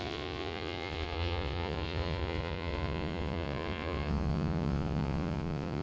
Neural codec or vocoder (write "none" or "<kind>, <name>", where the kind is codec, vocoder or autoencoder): vocoder, Vocos